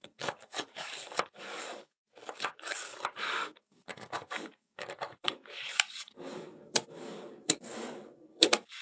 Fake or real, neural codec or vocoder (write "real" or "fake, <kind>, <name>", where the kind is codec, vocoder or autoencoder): fake, codec, DAC